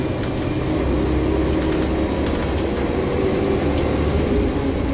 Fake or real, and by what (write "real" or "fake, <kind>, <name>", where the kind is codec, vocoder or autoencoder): real